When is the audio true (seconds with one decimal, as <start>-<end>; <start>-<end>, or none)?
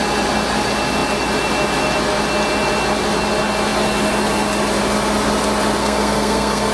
0.0-5.8